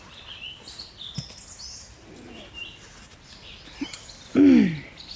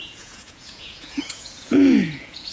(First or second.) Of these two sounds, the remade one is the second